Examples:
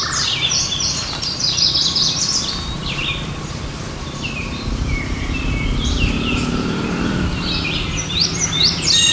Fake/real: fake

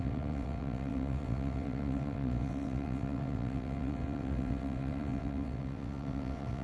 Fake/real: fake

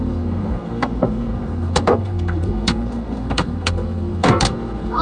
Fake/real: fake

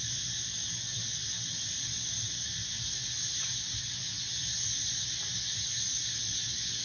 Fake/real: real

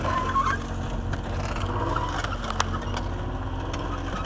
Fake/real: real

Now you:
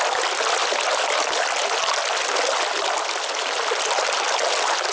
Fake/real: real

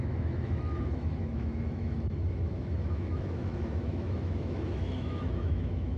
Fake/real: fake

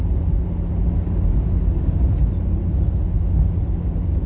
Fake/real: real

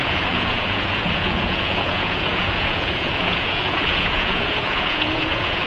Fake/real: fake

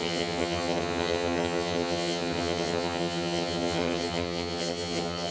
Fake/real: fake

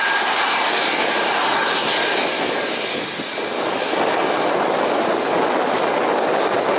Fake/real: real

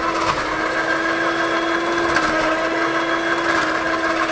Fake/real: real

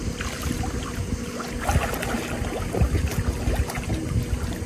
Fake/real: real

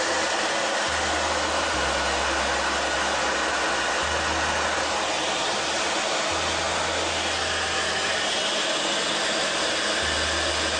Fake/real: real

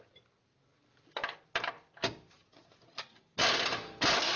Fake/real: real